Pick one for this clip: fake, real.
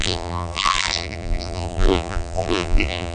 fake